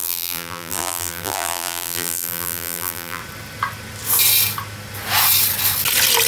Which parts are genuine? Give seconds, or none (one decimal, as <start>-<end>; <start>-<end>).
3.2-6.3